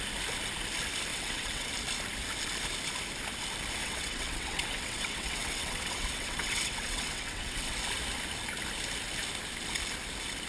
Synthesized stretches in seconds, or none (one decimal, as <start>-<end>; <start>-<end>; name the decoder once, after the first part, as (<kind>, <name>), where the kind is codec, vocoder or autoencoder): 1.1-1.7 (vocoder, WaveNeXt); 3.8-7.8